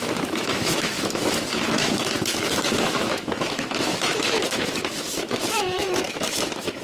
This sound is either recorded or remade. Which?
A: remade